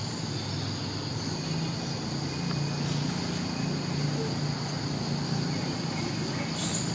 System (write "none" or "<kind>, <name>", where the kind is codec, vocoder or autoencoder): none